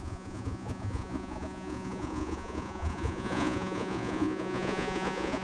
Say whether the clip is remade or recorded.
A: remade